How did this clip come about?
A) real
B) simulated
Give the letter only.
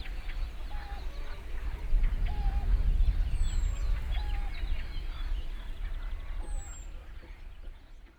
A